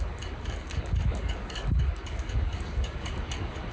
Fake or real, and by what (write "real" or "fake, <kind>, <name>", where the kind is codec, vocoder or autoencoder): fake, codec, DAC